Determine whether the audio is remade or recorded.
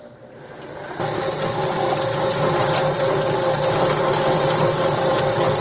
recorded